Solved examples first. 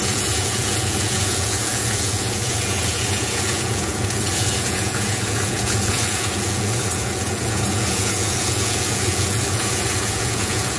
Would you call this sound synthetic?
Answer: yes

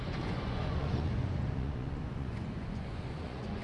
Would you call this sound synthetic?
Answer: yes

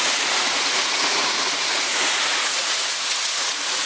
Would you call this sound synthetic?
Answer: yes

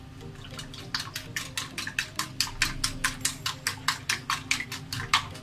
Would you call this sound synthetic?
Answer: no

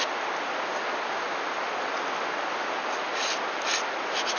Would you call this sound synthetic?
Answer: no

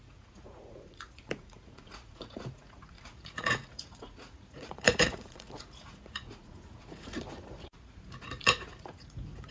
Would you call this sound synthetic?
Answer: yes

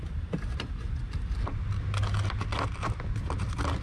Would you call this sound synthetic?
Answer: no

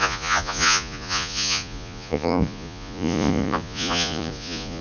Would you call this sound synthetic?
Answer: yes